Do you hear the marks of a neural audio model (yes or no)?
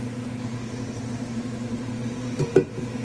no